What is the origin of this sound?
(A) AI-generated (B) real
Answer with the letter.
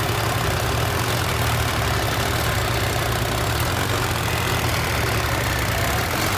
B